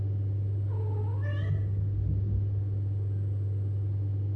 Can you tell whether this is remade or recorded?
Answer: recorded